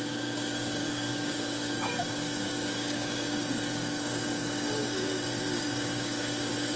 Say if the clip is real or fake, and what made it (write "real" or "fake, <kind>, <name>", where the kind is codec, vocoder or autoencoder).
fake, codec, DAC